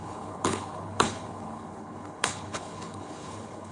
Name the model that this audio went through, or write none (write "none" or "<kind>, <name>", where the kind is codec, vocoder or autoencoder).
codec, HILCodec